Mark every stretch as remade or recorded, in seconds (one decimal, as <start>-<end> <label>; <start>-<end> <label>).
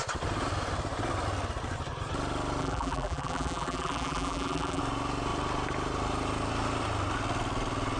0.0-2.6 recorded; 2.6-4.8 remade; 4.8-8.0 recorded